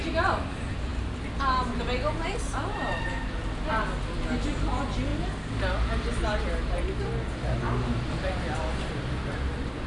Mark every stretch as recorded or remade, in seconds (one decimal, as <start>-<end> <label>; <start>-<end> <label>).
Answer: 0.0-9.9 recorded